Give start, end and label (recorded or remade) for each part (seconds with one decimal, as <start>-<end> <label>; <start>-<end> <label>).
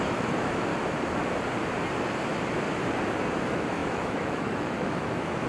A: 0.0-0.7 remade; 0.7-3.4 recorded; 3.4-5.5 remade